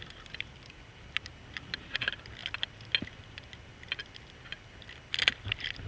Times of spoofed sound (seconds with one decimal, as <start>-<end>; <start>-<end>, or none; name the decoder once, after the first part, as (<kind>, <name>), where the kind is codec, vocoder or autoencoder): 0.0-1.3 (vocoder, BigVGAN v2); 2.0-2.4; 3.2-4.0; 5.1-5.9